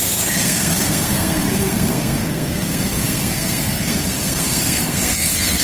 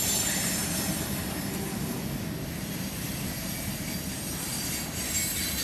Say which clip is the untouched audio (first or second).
second